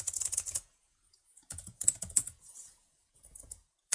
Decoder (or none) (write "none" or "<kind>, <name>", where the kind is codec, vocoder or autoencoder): vocoder, Vocos